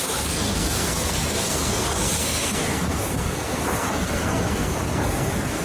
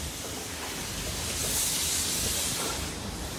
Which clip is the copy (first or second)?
first